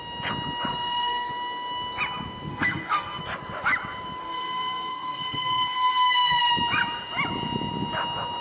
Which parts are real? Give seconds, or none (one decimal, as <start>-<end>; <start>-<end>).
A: 0.0-0.7; 1.3-2.5; 3.2-4.2; 6.5-8.4

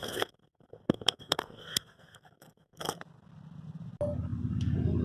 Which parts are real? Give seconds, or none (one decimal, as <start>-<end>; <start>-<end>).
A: 3.0-5.0

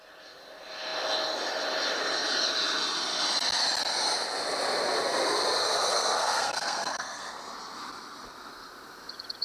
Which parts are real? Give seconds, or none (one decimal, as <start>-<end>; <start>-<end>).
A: 0.0-5.9; 7.4-9.4

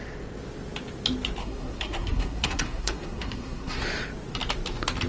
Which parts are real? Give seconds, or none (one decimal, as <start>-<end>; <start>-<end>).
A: 0.0-1.4; 3.8-5.1